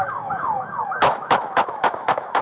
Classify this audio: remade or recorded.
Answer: remade